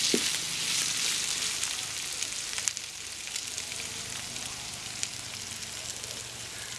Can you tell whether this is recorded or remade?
recorded